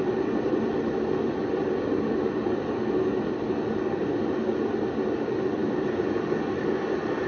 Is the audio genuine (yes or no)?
yes